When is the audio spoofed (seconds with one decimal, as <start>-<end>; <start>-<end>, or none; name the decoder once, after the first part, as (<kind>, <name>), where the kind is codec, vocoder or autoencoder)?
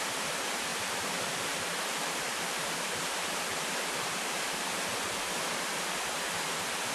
0.7-3.9 (vocoder, BigVGAN v2)